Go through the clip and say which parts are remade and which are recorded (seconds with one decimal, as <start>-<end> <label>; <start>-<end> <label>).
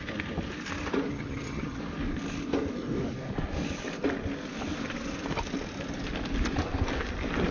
0.0-1.1 recorded; 1.1-1.8 remade; 1.8-7.5 recorded